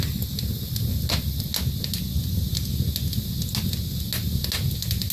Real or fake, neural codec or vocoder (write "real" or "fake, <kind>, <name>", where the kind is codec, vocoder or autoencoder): real